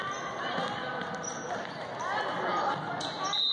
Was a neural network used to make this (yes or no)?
no